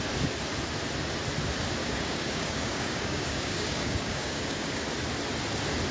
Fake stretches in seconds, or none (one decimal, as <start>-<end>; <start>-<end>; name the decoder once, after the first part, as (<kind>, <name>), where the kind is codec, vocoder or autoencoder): 1.8-4.8 (codec, DAC)